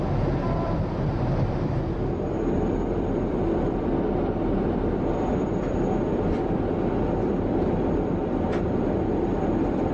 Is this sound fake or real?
fake